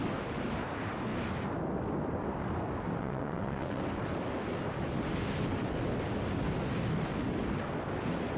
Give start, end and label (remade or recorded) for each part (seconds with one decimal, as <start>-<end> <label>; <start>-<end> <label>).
0.0-3.0 recorded; 3.0-3.8 remade; 3.8-8.4 recorded